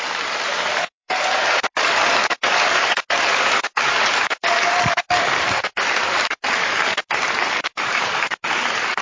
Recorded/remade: remade